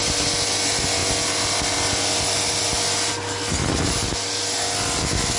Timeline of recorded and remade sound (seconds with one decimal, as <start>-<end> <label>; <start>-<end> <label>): 0.0-5.4 recorded